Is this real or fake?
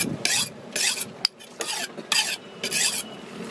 real